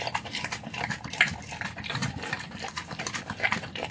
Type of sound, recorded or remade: remade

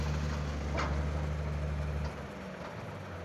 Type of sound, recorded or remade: recorded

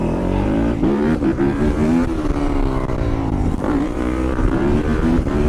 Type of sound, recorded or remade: remade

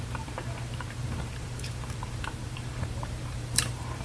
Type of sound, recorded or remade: remade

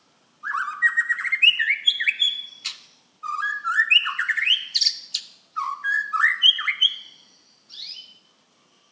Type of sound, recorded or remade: recorded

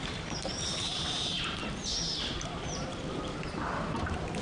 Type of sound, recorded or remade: remade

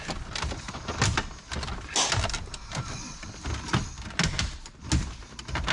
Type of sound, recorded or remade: recorded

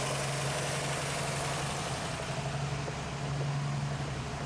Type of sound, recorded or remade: recorded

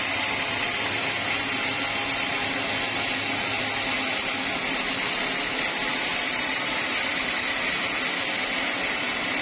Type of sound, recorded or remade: recorded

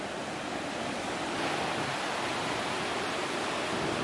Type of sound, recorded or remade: recorded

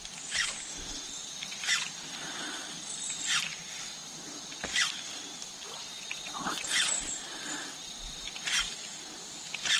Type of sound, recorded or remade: remade